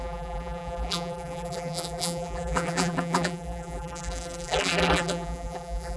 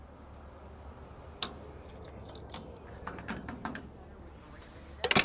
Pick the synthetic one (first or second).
first